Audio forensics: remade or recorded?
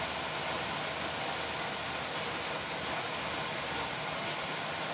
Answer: recorded